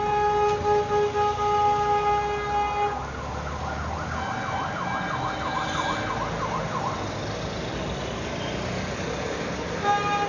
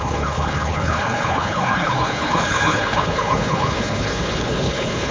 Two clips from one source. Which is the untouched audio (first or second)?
first